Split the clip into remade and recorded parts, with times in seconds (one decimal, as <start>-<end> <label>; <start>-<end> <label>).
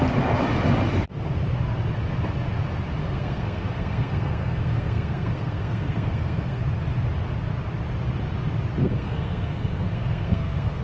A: 0.0-3.0 recorded; 3.0-6.6 remade; 6.6-8.8 recorded; 8.8-10.8 remade